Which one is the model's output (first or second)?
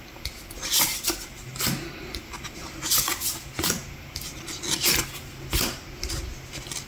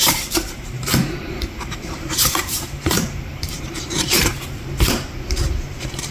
second